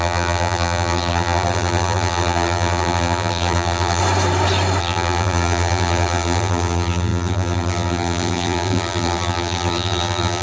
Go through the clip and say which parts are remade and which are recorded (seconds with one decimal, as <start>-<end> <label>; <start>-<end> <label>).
0.0-4.0 remade; 4.0-4.8 recorded; 4.8-10.4 remade